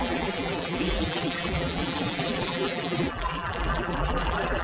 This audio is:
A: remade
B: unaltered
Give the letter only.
A